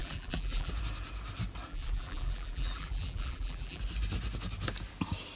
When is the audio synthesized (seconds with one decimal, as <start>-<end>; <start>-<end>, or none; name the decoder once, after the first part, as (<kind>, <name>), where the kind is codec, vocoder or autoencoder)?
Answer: 0.0-0.7 (vocoder, BigVGAN v2); 1.7-3.8

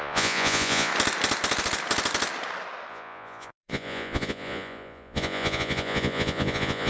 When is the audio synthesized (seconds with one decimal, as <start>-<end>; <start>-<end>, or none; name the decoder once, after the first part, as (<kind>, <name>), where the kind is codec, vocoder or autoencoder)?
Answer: 0.0-0.9 (vocoder, Vocos); 2.9-6.9

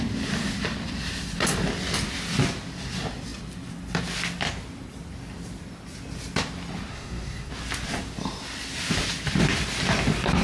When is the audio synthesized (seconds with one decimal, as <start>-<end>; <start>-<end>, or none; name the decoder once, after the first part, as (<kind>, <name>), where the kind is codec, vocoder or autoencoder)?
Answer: 6.9-7.5 (codec, SNAC)